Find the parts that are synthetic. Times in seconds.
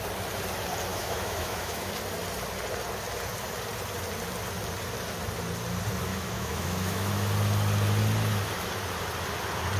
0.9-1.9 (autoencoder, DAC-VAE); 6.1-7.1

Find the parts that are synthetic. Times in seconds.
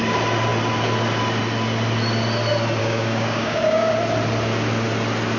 2.8-3.9 (codec, DAC)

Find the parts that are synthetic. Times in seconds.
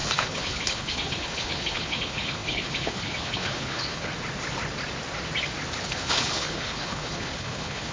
0.0-4.1 (codec, HILCodec); 5.8-7.9